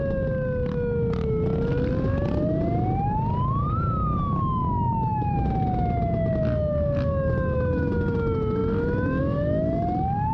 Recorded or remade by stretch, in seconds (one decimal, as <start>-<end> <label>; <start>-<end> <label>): 0.0-10.3 recorded